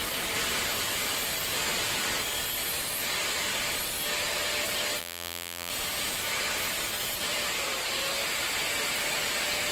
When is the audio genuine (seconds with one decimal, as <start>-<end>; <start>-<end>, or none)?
0.0-5.0; 5.7-9.7